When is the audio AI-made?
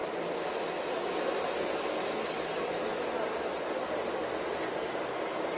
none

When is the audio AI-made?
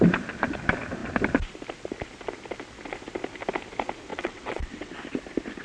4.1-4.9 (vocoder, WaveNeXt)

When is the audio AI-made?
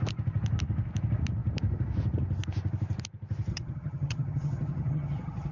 3.5-5.5 (vocoder, HiFi-GAN)